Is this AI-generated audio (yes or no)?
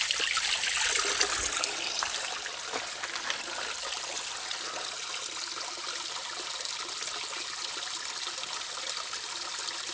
no